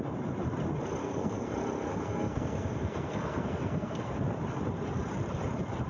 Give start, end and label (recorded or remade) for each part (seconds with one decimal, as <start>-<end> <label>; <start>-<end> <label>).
0.0-1.0 recorded; 1.0-1.5 remade; 1.5-1.9 recorded; 1.9-4.1 remade; 4.1-5.9 recorded